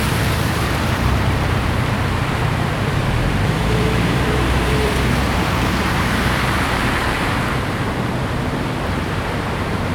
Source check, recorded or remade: remade